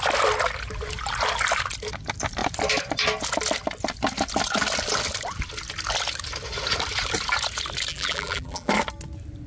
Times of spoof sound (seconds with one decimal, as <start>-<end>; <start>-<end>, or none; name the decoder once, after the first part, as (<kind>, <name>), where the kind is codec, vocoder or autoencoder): 7.9-8.7 (vocoder, BigVGAN v2)